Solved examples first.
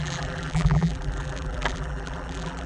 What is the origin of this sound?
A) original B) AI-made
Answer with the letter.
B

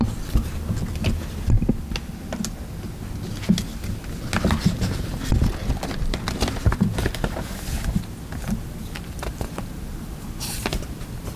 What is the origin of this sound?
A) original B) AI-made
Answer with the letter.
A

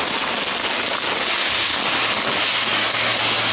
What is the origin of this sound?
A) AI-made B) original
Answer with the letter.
B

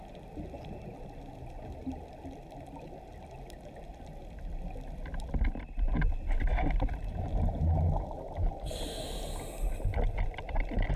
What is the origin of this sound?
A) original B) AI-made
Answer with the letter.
A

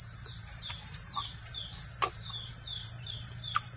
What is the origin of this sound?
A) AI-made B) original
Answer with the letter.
A